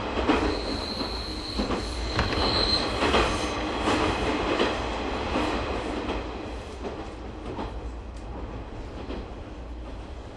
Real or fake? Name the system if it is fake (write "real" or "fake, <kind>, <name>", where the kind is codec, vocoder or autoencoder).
real